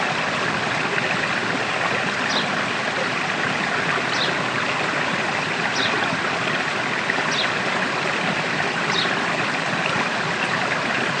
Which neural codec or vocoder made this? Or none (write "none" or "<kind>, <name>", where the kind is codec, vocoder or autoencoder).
none